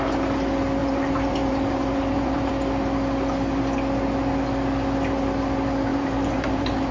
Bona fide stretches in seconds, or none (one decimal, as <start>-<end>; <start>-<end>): 0.0-0.8; 2.5-5.9